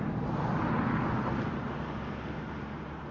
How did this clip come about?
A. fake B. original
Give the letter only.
B